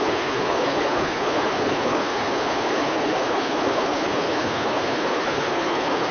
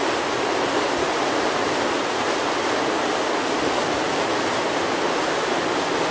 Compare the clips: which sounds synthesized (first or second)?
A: first